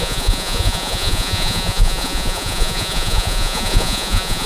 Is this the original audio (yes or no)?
no